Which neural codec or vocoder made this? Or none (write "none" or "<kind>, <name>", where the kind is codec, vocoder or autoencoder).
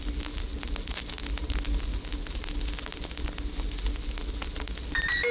none